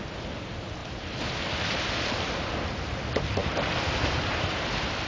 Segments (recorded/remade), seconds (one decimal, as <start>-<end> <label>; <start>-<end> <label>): 0.0-3.4 recorded; 3.4-5.1 remade